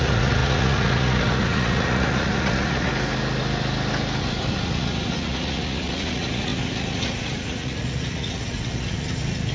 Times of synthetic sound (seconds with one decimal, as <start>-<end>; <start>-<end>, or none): 0.0-2.9; 4.2-9.5

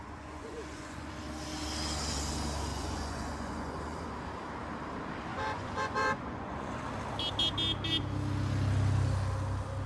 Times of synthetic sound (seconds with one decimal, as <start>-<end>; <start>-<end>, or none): 0.0-1.1; 2.7-4.1; 5.3-6.8